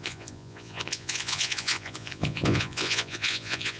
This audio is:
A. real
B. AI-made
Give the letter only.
B